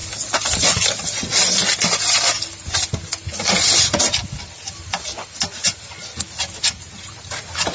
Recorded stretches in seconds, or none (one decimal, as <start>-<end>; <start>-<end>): 0.0-7.7